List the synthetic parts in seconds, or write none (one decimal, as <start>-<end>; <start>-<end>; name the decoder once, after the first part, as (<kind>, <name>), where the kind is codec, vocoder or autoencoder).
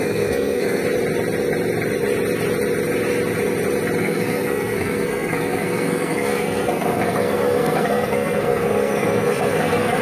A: 0.0-0.8 (codec, SNAC); 4.0-10.0